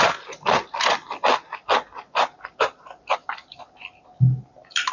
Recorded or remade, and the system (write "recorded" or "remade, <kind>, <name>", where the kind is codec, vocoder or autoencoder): recorded